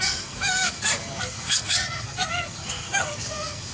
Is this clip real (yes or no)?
no